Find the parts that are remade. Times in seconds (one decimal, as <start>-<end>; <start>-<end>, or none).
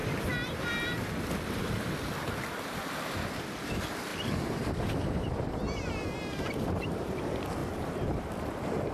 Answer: 2.9-4.1; 5.3-8.9